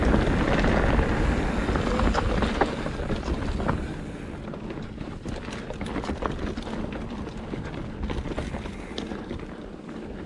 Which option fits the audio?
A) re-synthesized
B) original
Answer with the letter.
B